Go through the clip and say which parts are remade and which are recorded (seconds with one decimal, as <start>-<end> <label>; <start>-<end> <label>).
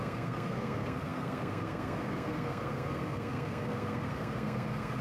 0.0-5.0 remade